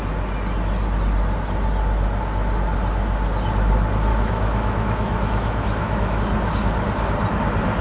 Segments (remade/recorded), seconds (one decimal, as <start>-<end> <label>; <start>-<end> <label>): 0.0-4.1 recorded; 4.1-6.2 remade; 6.2-7.8 recorded